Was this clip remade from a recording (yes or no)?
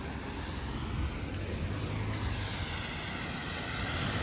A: no